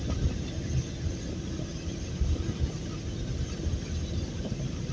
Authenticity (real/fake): real